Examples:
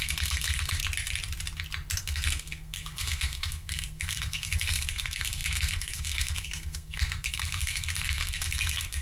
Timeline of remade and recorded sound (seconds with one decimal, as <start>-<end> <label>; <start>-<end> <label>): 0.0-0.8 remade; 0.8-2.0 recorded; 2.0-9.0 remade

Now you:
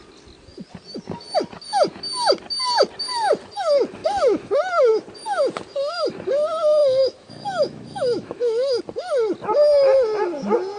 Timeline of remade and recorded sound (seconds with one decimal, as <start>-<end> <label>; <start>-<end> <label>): 0.0-4.0 recorded; 4.0-4.9 remade; 4.9-6.8 recorded; 6.8-8.8 remade; 8.8-10.8 recorded

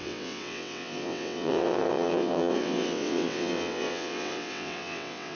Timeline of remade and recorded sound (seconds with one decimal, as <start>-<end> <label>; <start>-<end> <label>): 0.0-5.4 remade

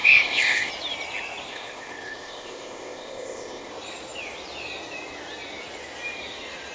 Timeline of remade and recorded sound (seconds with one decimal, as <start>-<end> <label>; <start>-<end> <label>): 0.0-0.7 remade; 0.7-1.5 recorded; 1.5-3.7 remade; 3.7-6.7 recorded